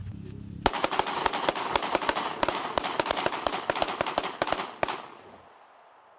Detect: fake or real real